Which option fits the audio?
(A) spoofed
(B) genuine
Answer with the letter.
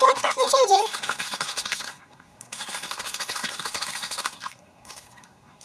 A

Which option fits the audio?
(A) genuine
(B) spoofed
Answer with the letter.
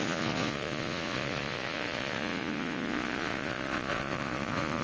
B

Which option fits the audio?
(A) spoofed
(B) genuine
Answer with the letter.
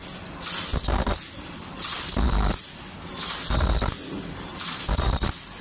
B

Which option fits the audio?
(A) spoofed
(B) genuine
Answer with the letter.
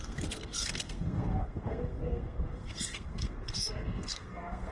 A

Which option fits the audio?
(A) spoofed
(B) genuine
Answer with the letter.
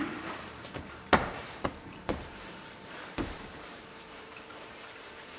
A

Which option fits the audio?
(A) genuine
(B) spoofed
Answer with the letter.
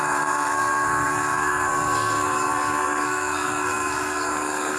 B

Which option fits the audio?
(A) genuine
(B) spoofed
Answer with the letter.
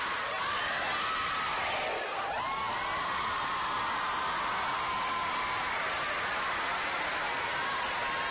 A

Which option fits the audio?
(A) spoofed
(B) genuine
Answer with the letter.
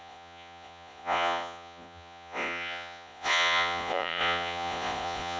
A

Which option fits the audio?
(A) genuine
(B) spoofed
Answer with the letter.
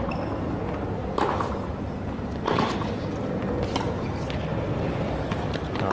A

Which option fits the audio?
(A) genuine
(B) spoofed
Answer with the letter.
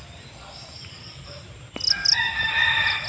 A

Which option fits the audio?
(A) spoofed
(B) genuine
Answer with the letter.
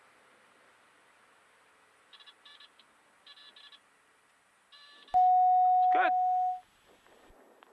B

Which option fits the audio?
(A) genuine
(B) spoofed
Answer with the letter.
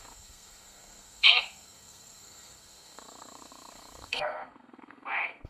B